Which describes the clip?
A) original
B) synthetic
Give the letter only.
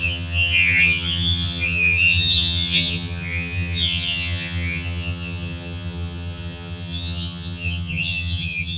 B